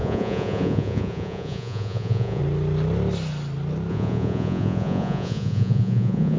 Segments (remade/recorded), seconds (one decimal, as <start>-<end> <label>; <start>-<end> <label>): 0.0-2.4 remade; 2.4-3.9 recorded; 3.9-6.4 remade